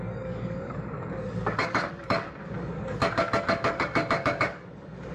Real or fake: fake